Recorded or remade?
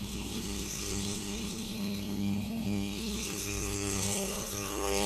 remade